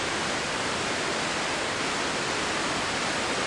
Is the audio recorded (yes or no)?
yes